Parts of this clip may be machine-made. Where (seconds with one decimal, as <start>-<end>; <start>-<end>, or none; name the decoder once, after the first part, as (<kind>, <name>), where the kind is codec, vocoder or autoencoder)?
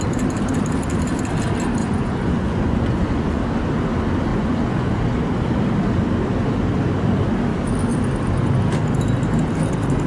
1.8-3.4 (vocoder, Vocos); 4.3-5.0